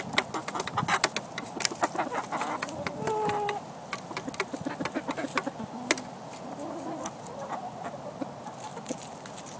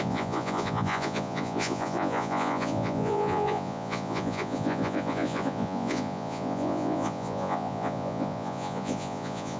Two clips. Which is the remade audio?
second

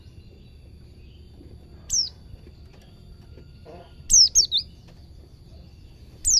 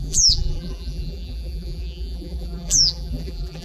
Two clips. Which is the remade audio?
second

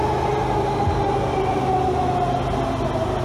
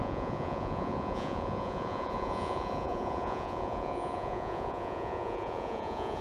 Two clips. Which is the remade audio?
second